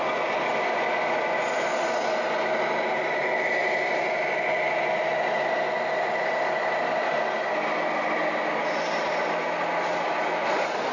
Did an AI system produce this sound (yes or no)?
no